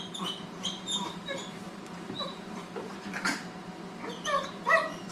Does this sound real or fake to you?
real